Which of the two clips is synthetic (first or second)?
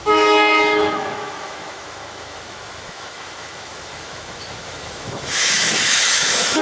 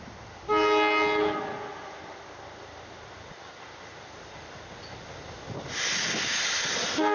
first